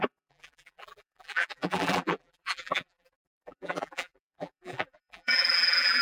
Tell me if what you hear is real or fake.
fake